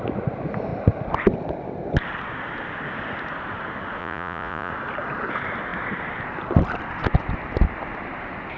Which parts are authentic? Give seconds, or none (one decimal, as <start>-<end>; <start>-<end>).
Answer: 0.0-4.0; 4.7-8.6